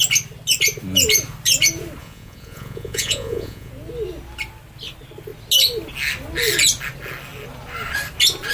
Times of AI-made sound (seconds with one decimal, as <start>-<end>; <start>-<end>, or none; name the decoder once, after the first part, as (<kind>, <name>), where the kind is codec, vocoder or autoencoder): 2.0-3.7 (vocoder, Vocos)